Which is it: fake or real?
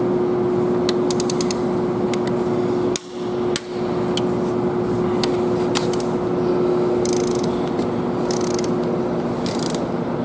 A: real